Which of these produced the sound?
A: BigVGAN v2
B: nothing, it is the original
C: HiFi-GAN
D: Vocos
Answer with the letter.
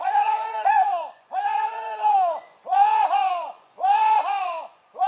D